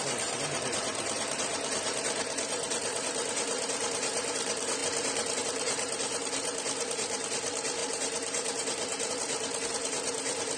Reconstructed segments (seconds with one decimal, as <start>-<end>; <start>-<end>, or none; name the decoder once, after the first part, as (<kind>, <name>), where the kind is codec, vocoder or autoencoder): 0.0-10.6 (vocoder, BigVGAN v2)